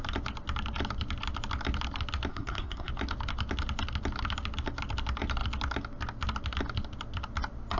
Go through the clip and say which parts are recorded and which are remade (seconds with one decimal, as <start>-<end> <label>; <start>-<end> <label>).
0.0-2.3 recorded; 2.3-2.9 remade; 2.9-7.8 recorded